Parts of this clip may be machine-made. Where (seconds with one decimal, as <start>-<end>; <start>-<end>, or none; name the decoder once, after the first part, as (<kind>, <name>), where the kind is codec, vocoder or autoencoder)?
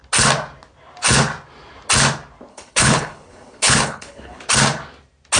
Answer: 2.5-4.4 (codec, HILCodec)